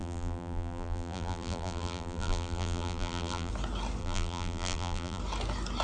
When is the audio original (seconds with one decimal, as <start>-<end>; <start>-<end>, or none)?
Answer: 3.5-4.0; 5.2-5.8